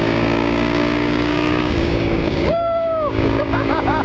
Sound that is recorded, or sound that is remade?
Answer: remade